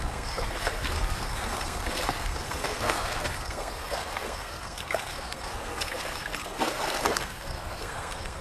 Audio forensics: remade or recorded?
remade